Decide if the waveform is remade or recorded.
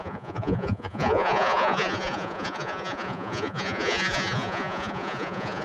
remade